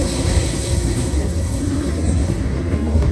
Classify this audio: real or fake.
fake